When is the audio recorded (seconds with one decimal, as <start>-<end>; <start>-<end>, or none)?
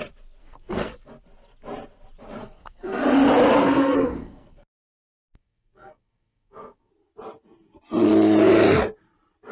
0.0-0.4; 1.1-2.4; 3.0-3.6; 6.9-9.5